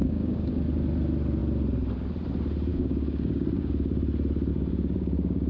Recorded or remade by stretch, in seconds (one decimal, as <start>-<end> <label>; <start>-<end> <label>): 0.0-0.5 remade; 0.5-2.7 recorded; 2.7-3.7 remade; 3.7-4.5 recorded; 4.5-5.5 remade